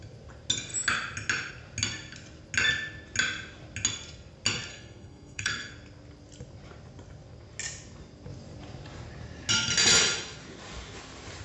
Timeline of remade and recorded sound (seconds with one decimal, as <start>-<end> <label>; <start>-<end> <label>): 0.0-4.7 recorded; 4.7-5.7 remade; 5.7-11.4 recorded